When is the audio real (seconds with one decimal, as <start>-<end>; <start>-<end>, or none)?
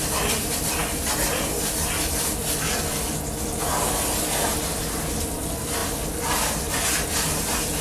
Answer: 0.0-7.8